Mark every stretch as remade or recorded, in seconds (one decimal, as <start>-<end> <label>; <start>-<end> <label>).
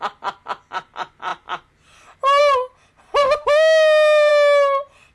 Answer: 0.0-3.2 recorded; 3.2-4.3 remade; 4.3-5.1 recorded